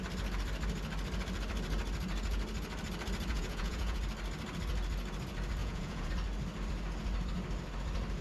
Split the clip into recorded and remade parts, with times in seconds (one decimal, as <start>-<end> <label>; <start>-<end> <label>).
0.0-3.3 recorded; 3.3-4.0 remade; 4.0-5.6 recorded; 5.6-6.1 remade; 6.1-8.2 recorded